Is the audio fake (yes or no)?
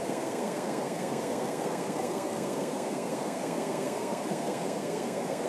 yes